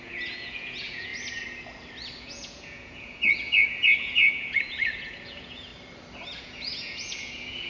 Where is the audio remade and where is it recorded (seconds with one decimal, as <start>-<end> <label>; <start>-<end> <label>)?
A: 0.0-1.1 remade; 1.1-2.2 recorded; 2.2-5.7 remade; 5.7-6.4 recorded; 6.4-7.7 remade